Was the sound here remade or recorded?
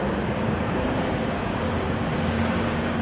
remade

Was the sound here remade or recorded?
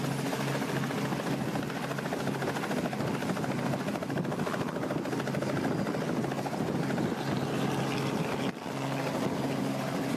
recorded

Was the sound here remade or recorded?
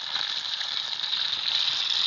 recorded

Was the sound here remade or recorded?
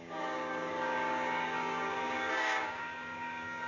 remade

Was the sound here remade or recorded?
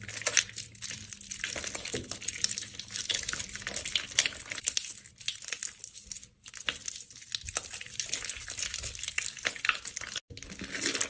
recorded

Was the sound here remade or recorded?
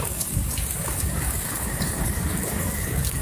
remade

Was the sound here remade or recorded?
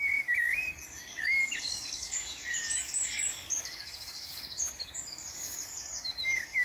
remade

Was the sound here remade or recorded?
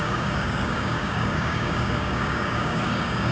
remade